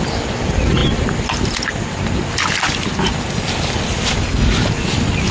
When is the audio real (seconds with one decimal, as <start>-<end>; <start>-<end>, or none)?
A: 0.0-5.3